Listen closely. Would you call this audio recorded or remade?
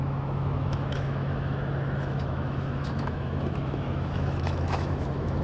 remade